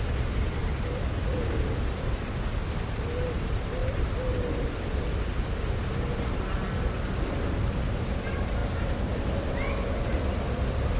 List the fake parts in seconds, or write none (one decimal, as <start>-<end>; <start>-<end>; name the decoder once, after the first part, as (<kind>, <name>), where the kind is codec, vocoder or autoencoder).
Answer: none